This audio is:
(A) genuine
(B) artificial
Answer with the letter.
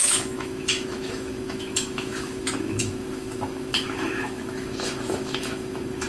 B